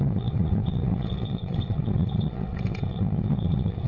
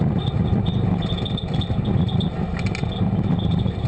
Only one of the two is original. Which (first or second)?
second